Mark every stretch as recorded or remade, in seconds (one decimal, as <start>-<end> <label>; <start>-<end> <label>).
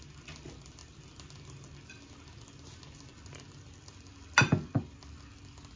0.0-5.8 recorded